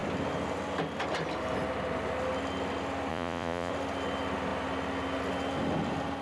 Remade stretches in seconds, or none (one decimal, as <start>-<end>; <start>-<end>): 3.1-3.7